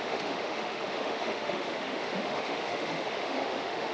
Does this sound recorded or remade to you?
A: remade